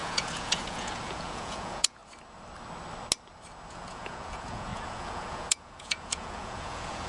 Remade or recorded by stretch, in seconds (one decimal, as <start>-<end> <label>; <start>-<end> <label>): 0.0-2.0 remade; 2.0-3.7 recorded; 3.7-7.1 remade